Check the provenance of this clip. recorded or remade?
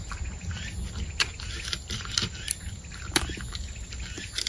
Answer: recorded